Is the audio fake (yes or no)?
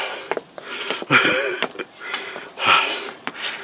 no